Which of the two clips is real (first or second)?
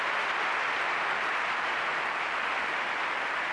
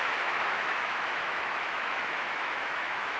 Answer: first